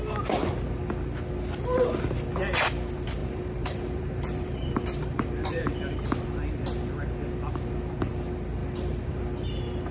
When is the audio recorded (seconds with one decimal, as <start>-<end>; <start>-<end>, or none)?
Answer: 0.0-3.2; 5.7-8.6; 9.2-9.9